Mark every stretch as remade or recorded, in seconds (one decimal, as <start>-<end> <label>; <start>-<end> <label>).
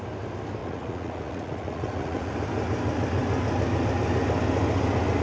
0.0-0.6 recorded; 0.6-2.3 remade; 2.3-5.2 recorded